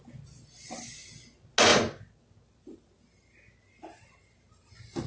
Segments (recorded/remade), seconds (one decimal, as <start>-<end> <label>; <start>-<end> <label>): 0.0-5.1 recorded